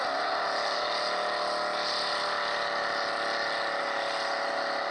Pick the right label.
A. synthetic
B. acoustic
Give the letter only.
B